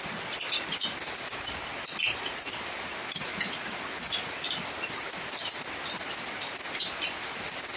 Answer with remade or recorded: recorded